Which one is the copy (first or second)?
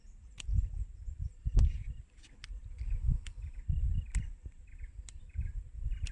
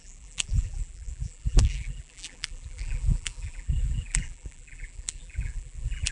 second